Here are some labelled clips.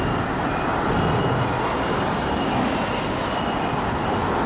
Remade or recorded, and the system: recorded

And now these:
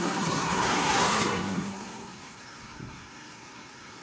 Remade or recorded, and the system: remade, codec, SNAC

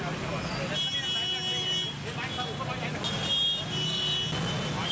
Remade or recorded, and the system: recorded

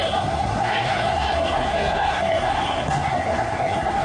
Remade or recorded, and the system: remade, codec, SNAC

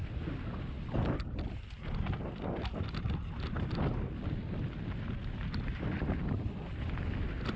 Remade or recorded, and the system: recorded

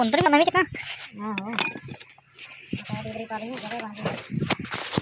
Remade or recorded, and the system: recorded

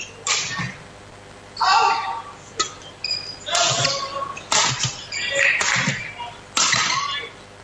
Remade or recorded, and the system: recorded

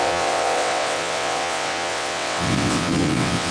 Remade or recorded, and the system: remade, vocoder, WaveNeXt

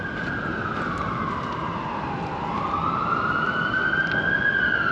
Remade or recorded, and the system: recorded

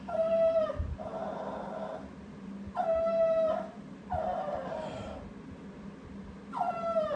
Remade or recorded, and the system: recorded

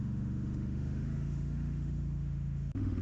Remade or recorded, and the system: remade, autoencoder, DAC-VAE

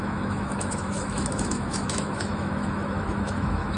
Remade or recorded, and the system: remade, autoencoder, DAC-VAE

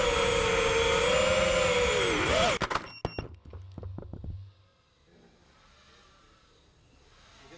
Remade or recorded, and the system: recorded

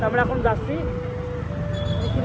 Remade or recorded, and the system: recorded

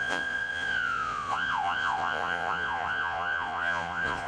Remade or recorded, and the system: remade, vocoder, Vocos